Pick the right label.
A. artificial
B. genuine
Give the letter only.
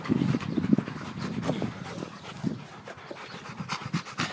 B